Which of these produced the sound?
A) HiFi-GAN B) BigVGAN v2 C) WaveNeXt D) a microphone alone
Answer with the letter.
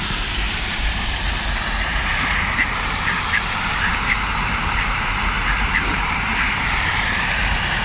B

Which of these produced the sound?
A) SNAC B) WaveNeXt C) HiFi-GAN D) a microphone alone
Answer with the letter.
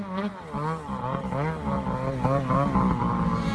D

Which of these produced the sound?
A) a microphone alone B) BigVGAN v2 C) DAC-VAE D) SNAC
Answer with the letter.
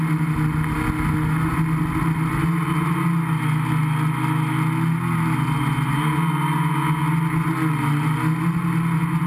A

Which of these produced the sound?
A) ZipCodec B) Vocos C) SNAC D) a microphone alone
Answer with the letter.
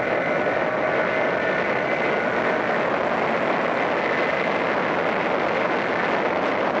D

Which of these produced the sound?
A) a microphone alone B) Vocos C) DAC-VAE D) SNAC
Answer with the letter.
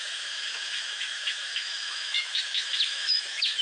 C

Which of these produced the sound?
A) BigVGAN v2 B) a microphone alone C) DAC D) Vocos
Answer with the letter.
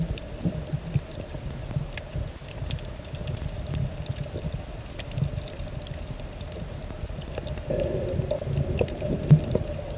B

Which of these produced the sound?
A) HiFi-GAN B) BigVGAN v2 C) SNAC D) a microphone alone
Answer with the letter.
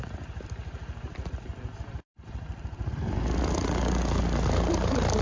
D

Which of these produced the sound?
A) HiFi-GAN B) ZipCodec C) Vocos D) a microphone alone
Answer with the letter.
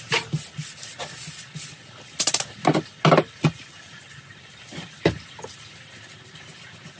D